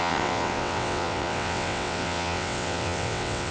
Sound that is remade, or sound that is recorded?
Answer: remade